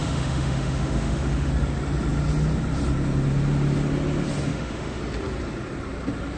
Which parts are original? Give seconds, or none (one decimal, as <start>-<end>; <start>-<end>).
1.5-4.5; 5.0-6.4